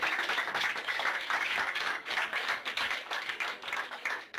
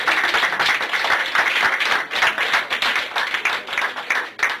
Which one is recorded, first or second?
second